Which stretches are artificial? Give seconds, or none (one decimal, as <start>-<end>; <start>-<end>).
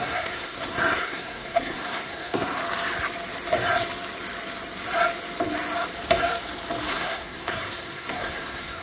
0.0-2.6; 6.9-8.8